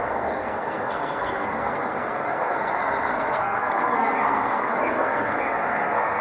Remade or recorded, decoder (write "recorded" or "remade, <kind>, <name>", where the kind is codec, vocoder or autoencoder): remade, codec, SNAC